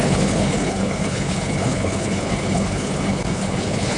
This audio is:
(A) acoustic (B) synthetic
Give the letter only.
B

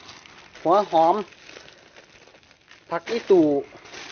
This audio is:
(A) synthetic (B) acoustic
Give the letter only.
B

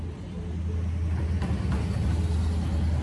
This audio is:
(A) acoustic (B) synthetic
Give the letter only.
A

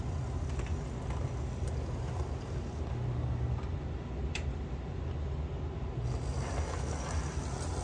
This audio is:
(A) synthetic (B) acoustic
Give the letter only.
B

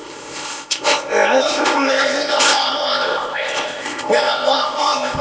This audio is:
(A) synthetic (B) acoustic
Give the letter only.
A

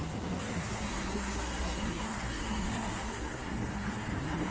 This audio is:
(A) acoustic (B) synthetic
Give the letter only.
B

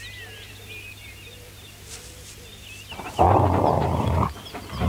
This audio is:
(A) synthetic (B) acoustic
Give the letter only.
B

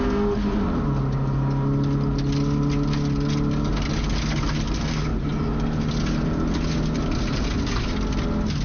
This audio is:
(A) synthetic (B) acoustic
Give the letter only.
B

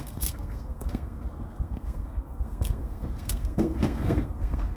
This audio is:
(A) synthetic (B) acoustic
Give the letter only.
A